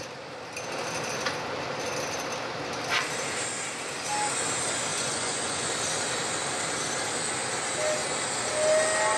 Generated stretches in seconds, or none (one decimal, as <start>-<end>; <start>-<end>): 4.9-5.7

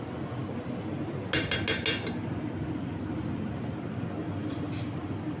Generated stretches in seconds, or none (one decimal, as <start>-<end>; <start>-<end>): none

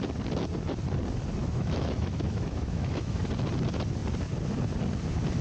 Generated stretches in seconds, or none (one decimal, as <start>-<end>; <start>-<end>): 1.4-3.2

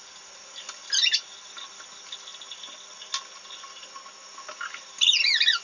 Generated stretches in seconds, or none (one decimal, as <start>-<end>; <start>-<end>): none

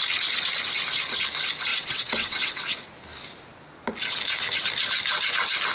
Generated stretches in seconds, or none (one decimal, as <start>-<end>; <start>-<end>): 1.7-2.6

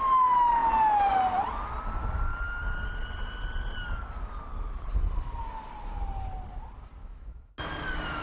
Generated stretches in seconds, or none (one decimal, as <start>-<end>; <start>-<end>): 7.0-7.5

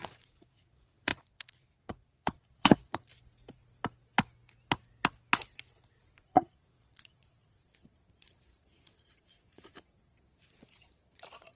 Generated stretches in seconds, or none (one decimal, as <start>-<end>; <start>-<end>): 0.0-3.1; 6.2-11.6

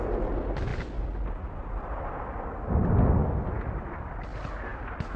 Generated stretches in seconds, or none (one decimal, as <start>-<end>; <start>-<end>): none